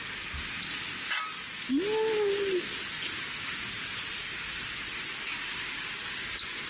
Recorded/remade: recorded